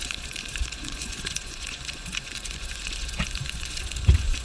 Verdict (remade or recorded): remade